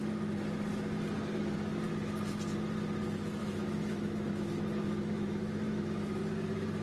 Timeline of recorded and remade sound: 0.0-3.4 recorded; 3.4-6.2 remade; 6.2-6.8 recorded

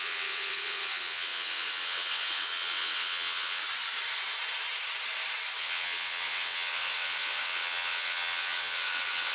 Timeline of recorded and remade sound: 0.0-3.6 remade; 3.6-5.6 recorded; 5.6-9.3 remade

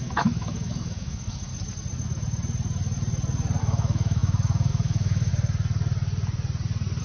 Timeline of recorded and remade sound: 0.0-1.5 remade; 1.5-3.6 recorded; 3.6-5.3 remade; 5.3-7.0 recorded

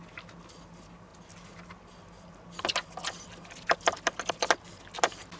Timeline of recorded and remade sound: 0.0-5.4 recorded

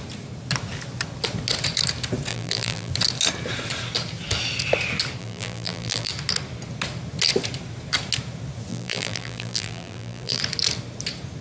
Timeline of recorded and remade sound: 0.0-2.3 recorded; 2.3-2.9 remade; 2.9-5.2 recorded; 5.2-6.1 remade; 6.1-8.7 recorded; 8.7-10.4 remade; 10.4-11.4 recorded

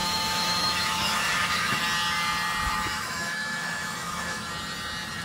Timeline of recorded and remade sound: 0.0-1.8 remade; 1.8-2.9 recorded; 2.9-4.5 remade; 4.5-5.2 recorded

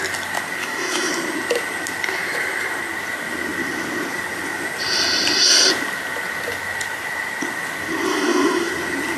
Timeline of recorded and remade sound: 0.0-0.6 recorded; 0.6-1.1 remade; 1.1-8.1 recorded; 8.1-8.7 remade; 8.7-9.2 recorded

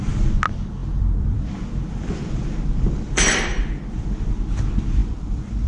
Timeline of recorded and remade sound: 0.0-0.8 recorded; 0.8-4.2 remade; 4.2-5.0 recorded; 5.0-5.7 remade